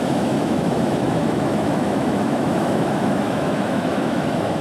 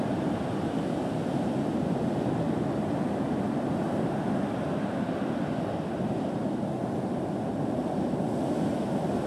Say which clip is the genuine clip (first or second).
second